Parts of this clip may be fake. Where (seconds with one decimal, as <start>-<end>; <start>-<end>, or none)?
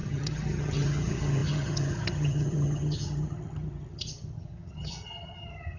0.0-5.8